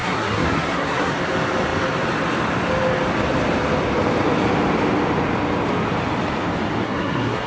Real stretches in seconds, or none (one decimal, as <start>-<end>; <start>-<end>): 1.1-6.8